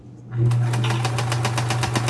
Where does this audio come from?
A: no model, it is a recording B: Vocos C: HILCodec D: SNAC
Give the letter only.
A